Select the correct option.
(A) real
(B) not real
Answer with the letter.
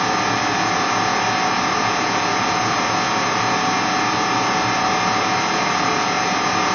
A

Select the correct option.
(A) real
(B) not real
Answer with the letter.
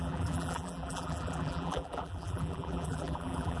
B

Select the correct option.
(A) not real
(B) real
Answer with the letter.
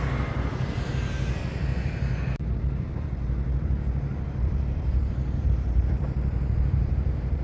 A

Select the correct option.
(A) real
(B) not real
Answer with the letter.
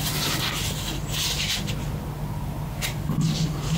A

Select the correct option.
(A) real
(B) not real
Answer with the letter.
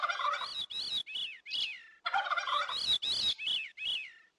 A